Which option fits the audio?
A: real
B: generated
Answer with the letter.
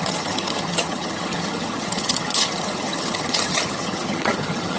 B